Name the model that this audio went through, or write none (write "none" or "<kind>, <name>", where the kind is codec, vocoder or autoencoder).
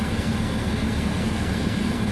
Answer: codec, SNAC